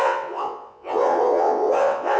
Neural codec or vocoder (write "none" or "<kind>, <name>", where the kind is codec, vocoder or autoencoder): vocoder, WaveNeXt